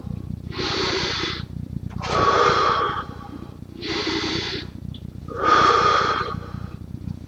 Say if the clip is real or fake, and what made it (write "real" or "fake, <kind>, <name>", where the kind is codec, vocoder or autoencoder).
fake, vocoder, BigVGAN v2